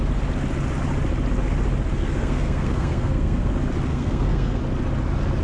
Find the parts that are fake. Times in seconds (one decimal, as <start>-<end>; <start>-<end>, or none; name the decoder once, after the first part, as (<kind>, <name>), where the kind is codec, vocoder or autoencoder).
2.0-3.5 (codec, SNAC); 3.9-4.6

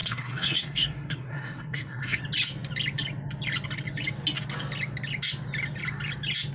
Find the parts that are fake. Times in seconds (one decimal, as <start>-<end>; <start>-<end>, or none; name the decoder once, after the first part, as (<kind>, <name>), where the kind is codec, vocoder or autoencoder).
0.0-2.2 (codec, SNAC)